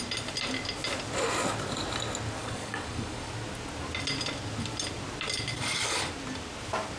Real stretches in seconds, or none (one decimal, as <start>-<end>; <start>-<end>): 0.0-2.4; 3.3-5.5; 6.1-7.0